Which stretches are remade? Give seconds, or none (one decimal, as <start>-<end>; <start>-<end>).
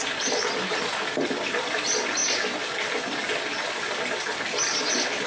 none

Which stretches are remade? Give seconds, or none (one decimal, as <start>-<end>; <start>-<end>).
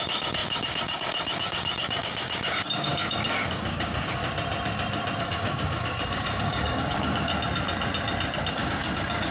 0.0-4.2; 5.2-7.3; 8.5-9.3